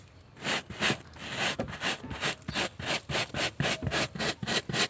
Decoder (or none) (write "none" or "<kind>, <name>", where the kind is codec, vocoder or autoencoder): none